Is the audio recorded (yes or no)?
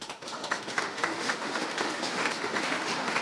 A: no